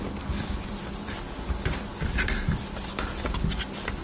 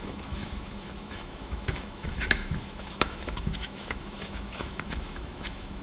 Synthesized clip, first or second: second